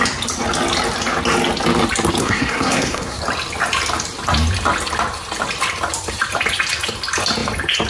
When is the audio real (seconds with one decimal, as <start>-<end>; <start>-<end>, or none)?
0.0-2.2; 3.2-7.9